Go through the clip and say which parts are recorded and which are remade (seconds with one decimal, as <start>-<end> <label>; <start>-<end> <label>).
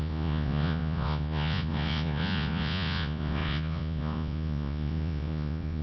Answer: 0.0-5.8 remade